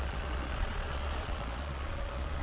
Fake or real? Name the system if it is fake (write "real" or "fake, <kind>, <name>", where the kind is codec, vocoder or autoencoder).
fake, vocoder, Vocos